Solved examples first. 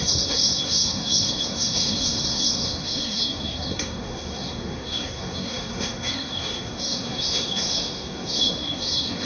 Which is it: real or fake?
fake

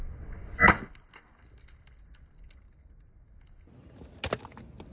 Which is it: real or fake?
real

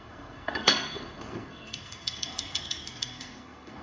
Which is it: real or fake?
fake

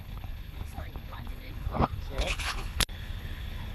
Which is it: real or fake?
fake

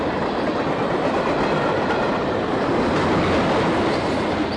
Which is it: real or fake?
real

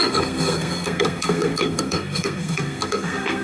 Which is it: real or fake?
fake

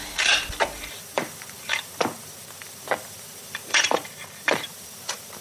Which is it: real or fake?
fake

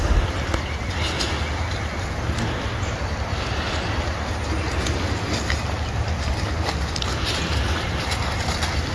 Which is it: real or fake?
real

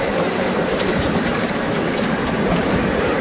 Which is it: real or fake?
fake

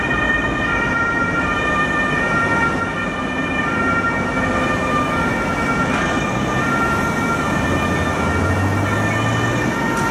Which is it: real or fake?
real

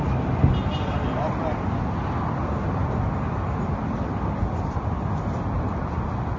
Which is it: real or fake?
real